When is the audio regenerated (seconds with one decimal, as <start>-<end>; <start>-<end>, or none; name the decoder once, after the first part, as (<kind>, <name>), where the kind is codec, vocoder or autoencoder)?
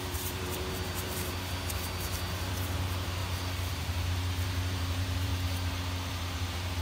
0.0-3.2 (vocoder, BigVGAN v2); 3.7-5.3; 6.1-6.8